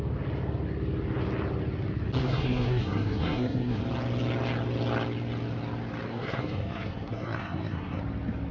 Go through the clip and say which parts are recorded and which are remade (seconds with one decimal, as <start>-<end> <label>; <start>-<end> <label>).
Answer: 0.0-2.2 recorded; 2.2-3.8 remade; 3.8-6.1 recorded; 6.1-8.0 remade; 8.0-8.5 recorded